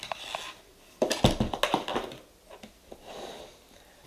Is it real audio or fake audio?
real